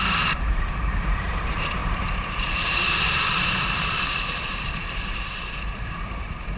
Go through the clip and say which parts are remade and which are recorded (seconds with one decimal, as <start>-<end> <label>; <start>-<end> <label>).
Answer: 0.0-6.6 remade